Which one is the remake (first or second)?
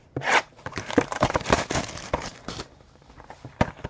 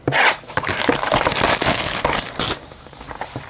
first